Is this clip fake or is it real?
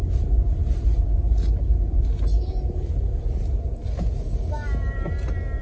real